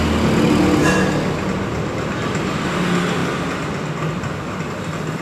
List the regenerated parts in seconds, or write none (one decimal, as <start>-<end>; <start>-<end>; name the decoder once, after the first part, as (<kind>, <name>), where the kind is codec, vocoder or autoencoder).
none